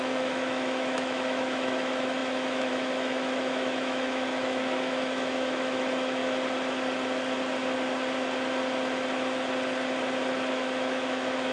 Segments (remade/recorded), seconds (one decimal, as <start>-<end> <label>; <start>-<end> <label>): 0.0-6.2 remade; 6.2-10.5 recorded; 10.5-11.5 remade